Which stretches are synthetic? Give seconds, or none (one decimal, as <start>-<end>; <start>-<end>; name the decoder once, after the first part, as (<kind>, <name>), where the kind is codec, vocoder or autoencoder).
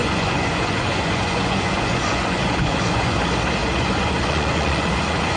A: 0.0-3.2 (vocoder, Vocos); 3.6-5.4